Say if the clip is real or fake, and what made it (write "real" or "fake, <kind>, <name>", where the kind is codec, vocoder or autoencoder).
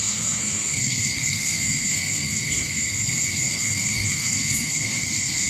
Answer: fake, codec, SNAC